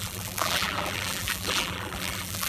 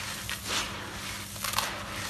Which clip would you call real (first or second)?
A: second